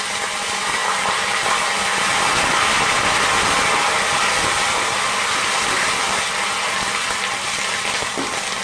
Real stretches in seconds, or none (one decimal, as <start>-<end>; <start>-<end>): 0.0-8.6

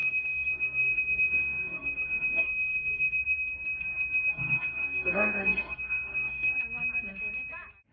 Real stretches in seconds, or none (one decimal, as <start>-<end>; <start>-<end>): 3.2-4.3; 6.5-7.9

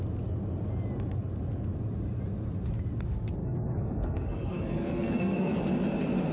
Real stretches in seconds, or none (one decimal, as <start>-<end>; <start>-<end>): 0.0-3.4; 5.6-6.3

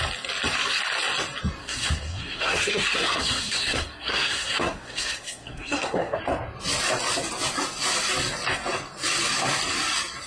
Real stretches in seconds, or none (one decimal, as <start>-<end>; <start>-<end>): 0.0-1.6; 6.2-10.3

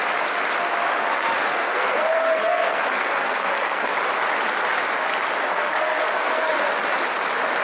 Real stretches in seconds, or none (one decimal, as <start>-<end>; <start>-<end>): 0.0-1.5; 3.9-5.5; 6.7-7.6

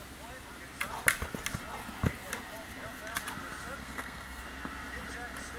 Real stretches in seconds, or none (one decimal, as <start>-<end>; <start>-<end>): 0.0-3.8; 4.4-5.6